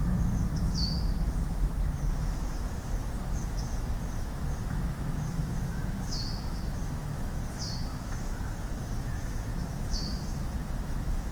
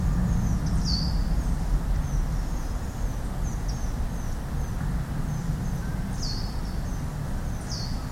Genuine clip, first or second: second